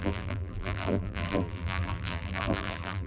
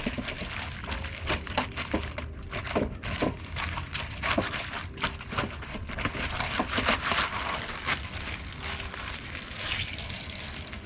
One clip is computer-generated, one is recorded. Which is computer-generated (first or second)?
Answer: first